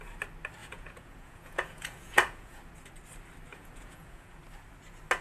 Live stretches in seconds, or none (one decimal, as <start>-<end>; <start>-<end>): 0.0-0.6; 2.6-3.5; 4.4-5.2